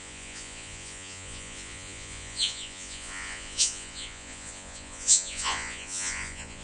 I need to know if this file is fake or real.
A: fake